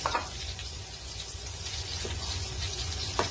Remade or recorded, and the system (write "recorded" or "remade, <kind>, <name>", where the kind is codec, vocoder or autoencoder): remade, vocoder, Vocos